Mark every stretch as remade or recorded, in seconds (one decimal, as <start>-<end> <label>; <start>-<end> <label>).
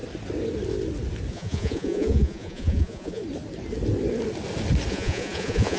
0.0-1.3 recorded; 1.3-3.2 remade; 3.2-4.9 recorded; 4.9-5.8 remade